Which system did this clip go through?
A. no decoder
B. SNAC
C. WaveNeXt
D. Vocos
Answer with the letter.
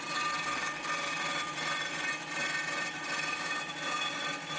A